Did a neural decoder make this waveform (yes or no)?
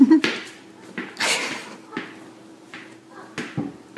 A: no